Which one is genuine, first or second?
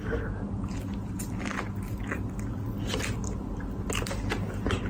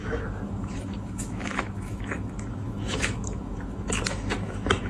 first